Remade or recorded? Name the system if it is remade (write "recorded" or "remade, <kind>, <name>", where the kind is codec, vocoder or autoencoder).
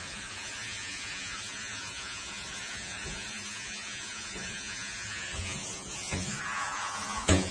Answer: remade, vocoder, Vocos